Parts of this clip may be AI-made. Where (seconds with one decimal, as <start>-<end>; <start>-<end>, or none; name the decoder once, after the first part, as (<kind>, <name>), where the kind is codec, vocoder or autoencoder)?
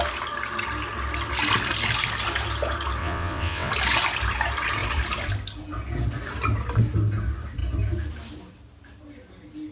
3.0-3.7 (vocoder, WaveNeXt)